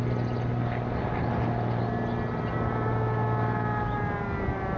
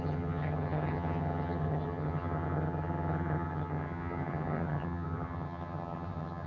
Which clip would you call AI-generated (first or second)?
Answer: second